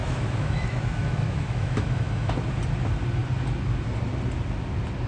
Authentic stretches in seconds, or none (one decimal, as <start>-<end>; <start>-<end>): 2.3-5.1

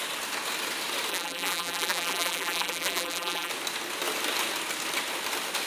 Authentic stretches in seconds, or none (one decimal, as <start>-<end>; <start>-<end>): 0.0-1.1; 3.5-5.7

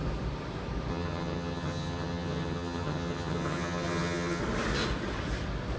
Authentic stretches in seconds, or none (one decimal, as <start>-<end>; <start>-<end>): 0.0-0.9; 4.4-5.8

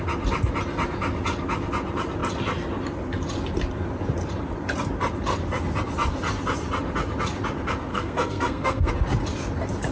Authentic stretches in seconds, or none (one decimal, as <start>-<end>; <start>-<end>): 0.0-7.9; 8.9-9.9

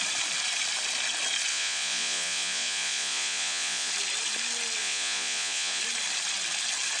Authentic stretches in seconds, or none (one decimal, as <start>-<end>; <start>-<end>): 0.0-1.5; 3.9-4.8; 5.8-7.0

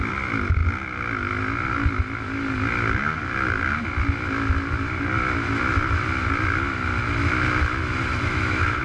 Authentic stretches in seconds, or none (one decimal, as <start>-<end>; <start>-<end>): 0.0-8.1

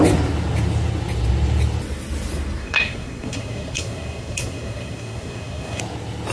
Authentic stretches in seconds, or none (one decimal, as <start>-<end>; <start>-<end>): 0.0-2.6; 5.8-6.3

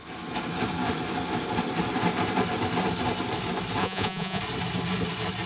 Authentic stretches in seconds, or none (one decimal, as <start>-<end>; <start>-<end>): 0.0-3.8; 4.4-5.5